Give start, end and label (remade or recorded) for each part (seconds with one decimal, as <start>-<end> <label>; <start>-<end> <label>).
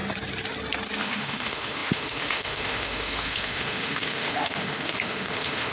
0.0-1.0 recorded; 1.0-5.7 remade